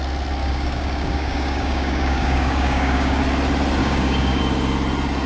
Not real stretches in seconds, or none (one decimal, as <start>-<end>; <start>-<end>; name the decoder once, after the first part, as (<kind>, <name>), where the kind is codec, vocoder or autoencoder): 0.4-3.2 (codec, DAC); 3.8-4.4